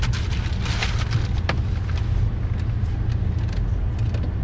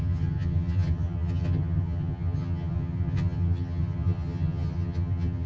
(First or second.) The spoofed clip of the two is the second